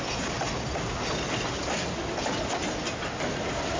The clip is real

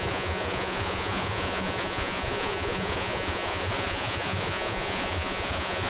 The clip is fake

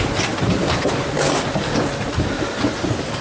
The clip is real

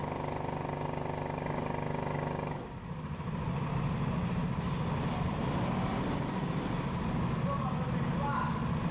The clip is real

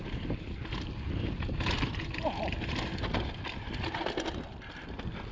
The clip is real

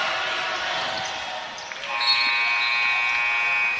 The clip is real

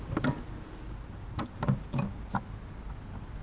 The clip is real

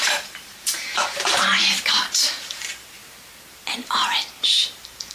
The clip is fake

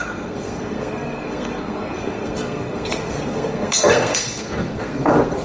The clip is fake